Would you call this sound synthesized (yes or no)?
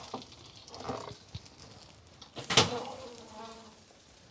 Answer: no